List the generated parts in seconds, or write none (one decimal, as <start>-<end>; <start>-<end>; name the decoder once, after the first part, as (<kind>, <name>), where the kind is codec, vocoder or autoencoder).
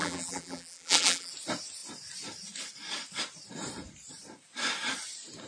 0.0-1.3 (vocoder, BigVGAN v2)